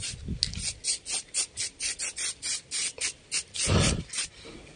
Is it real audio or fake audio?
real